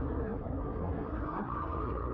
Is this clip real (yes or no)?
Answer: no